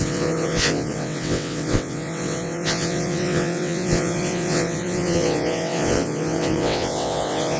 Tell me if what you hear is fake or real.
fake